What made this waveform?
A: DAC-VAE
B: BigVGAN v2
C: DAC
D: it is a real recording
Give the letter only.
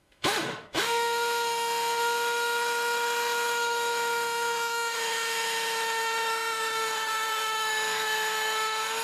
A